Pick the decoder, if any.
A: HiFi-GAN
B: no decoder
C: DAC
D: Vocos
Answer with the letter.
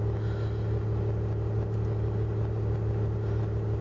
B